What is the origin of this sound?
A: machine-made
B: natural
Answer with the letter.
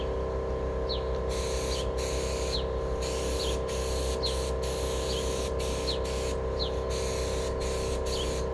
B